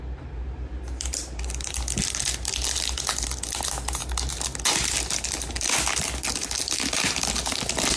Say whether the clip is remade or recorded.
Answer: recorded